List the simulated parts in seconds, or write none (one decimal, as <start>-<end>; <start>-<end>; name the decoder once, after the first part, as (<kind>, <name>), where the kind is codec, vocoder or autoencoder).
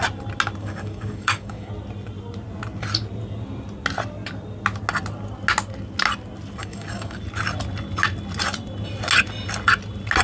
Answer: 0.6-1.7 (codec, DAC); 6.6-7.2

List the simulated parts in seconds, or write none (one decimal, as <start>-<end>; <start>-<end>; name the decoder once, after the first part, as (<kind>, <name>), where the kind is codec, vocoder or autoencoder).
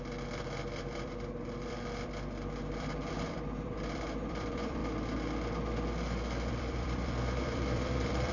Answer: 0.0-4.8 (vocoder, BigVGAN v2); 6.5-8.3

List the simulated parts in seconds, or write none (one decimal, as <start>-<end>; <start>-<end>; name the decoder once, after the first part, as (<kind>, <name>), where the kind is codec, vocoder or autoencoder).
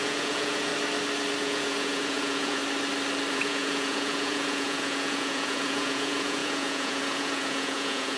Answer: 0.0-0.7 (vocoder, Vocos); 1.4-2.6; 3.3-8.2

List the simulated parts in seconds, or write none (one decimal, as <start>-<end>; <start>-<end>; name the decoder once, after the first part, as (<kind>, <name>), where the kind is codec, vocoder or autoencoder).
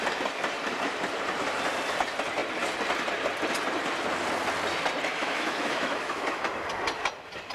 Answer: 5.2-6.4 (autoencoder, DAC-VAE)